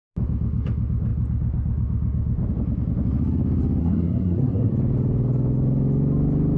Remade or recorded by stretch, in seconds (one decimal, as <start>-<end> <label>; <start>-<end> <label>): 0.0-3.8 recorded; 3.8-4.7 remade; 4.7-6.6 recorded